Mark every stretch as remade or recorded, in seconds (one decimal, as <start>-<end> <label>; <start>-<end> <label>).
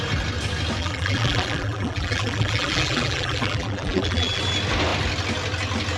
0.0-0.8 recorded; 0.8-4.4 remade; 4.4-6.0 recorded